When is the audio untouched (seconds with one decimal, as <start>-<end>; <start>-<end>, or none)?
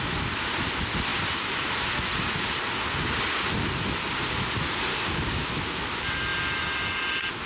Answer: 0.0-4.9; 5.5-7.5